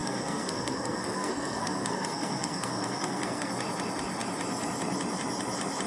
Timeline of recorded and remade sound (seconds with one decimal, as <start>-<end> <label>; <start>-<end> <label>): 0.0-3.5 remade; 3.5-5.9 recorded